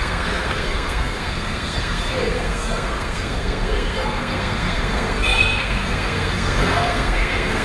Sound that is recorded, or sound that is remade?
remade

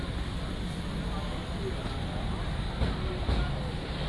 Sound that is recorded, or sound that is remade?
recorded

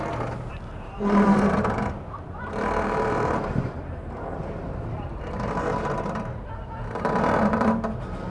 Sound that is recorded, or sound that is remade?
remade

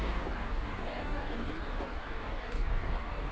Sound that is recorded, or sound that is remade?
remade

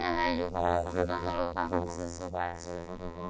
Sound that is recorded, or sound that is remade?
remade